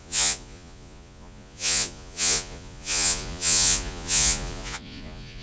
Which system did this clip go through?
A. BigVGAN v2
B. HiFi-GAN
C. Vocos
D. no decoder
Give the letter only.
C